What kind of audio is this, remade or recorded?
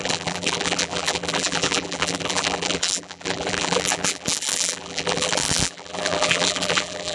remade